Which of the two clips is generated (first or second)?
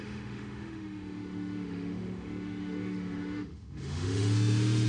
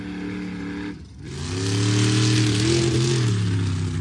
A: first